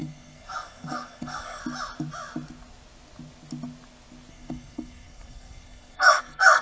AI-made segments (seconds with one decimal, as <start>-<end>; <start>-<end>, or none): 0.0-1.6; 4.3-6.6